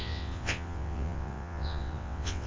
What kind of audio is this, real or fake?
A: fake